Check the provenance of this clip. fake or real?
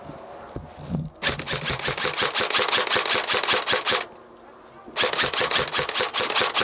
real